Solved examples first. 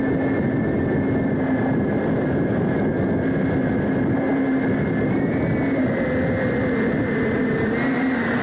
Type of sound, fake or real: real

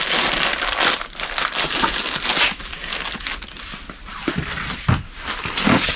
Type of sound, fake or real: real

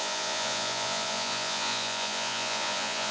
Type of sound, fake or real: fake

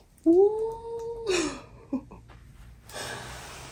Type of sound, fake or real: real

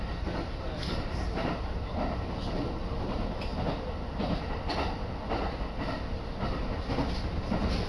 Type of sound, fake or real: real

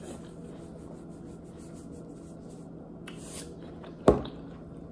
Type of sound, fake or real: real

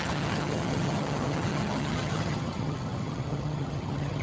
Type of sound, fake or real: fake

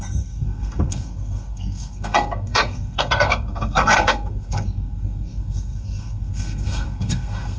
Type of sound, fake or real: fake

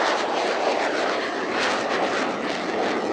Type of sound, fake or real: real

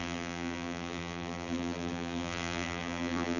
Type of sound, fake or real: fake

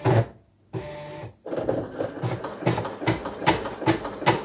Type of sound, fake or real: real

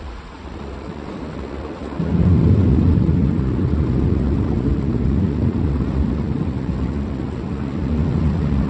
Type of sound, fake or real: fake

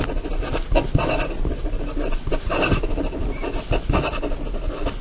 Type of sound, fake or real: real